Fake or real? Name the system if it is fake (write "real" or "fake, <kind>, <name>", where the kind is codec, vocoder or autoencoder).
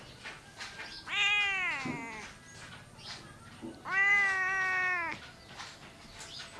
real